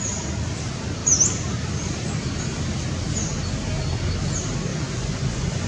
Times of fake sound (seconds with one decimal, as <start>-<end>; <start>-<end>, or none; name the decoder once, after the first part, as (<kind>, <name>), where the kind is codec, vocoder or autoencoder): 4.7-5.7 (vocoder, Vocos)